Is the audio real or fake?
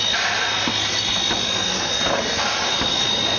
real